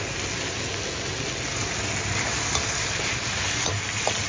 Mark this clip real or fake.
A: real